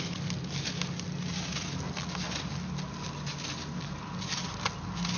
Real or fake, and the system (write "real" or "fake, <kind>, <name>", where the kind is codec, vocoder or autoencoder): real